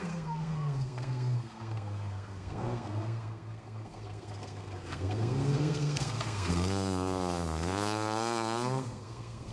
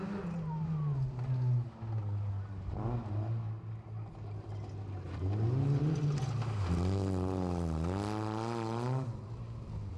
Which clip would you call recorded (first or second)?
second